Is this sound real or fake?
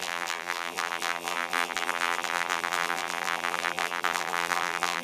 fake